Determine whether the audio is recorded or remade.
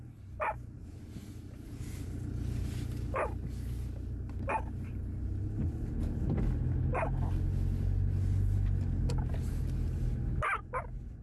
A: recorded